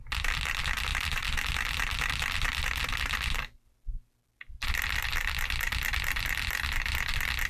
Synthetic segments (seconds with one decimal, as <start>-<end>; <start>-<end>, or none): none